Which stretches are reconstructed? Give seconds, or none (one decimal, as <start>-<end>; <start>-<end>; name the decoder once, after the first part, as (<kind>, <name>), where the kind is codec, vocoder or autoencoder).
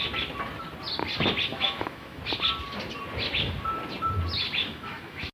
1.5-2.2 (autoencoder, DAC-VAE); 4.6-5.3